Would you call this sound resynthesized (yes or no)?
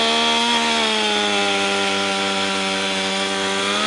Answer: no